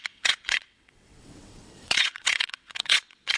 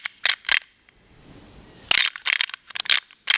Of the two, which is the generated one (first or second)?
first